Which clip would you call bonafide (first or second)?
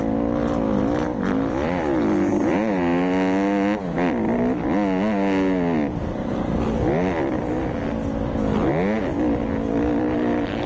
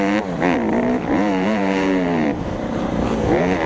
first